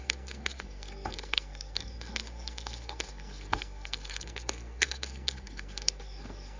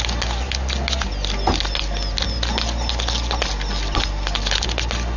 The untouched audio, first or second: second